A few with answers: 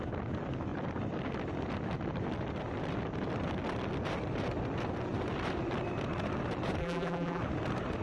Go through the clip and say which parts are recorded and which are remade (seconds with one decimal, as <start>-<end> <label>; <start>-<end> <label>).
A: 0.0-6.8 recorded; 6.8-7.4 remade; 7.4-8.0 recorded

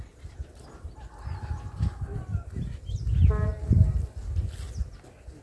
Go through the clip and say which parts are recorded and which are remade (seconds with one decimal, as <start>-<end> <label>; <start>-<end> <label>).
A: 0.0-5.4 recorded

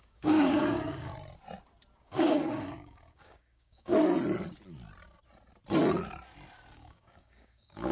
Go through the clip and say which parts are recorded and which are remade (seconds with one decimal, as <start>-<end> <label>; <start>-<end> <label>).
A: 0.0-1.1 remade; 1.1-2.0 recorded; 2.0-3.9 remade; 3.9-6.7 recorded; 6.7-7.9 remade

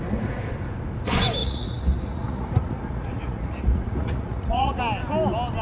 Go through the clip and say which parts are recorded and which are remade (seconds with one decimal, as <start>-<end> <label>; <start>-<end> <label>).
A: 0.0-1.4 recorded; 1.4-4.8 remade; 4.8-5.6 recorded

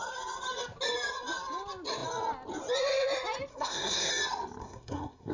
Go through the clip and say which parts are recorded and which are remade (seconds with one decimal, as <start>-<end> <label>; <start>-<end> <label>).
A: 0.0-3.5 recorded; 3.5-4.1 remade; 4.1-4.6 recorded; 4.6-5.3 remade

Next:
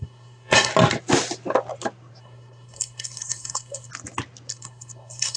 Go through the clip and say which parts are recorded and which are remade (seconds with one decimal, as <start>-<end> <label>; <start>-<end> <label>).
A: 0.0-0.7 remade; 0.7-2.2 recorded; 2.2-3.9 remade; 3.9-4.5 recorded; 4.5-5.4 remade

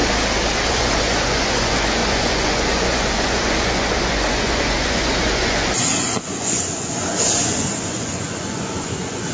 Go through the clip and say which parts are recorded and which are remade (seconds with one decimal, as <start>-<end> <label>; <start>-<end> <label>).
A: 0.0-0.7 recorded; 0.7-9.3 remade